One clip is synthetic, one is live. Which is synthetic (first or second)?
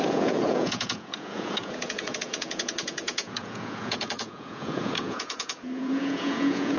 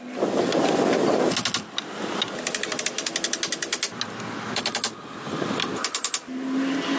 first